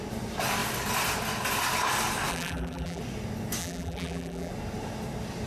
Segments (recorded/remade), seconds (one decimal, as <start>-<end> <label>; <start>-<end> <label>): 0.0-2.3 recorded; 2.3-3.0 remade; 3.0-3.6 recorded; 3.6-4.5 remade; 4.5-5.5 recorded